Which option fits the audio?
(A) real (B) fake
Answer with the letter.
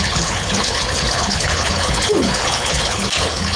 B